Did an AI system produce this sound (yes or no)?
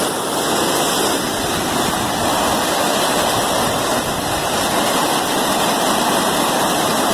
no